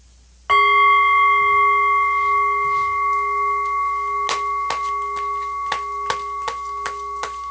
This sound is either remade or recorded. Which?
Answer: recorded